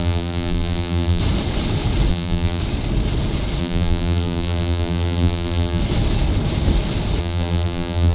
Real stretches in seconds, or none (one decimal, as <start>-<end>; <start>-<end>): 1.2-2.1; 2.6-3.6; 5.8-7.2